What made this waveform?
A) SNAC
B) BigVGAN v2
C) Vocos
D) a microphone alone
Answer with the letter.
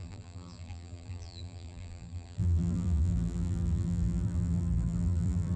B